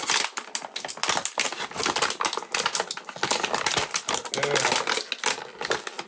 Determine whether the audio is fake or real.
real